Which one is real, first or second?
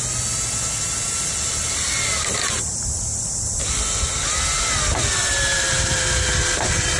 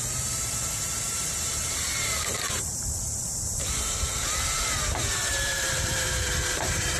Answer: first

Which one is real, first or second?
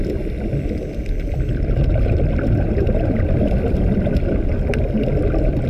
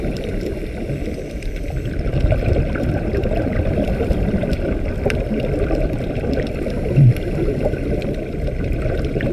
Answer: first